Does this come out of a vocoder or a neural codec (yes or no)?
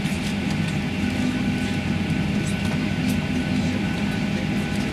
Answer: no